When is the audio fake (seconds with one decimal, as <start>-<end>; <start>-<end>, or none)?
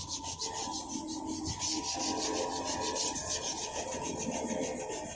3.2-4.1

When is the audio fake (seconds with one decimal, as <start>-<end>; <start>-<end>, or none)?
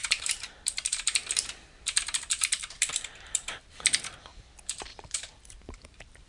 0.0-3.8; 4.9-6.3